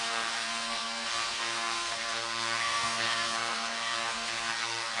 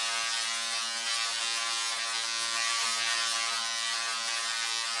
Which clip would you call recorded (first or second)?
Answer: second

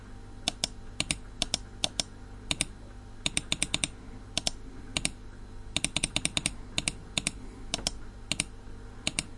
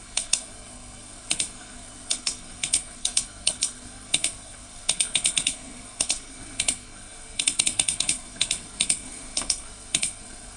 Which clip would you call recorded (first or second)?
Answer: first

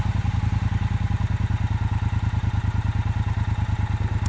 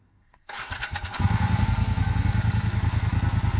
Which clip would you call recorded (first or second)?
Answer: first